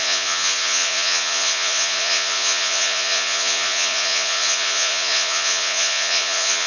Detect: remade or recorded remade